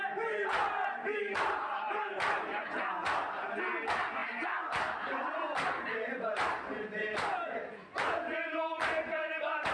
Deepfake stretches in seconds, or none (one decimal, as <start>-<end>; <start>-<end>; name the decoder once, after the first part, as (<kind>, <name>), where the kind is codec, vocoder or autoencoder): none